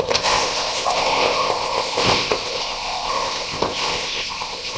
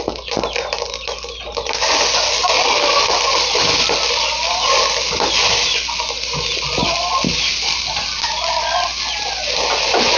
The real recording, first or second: second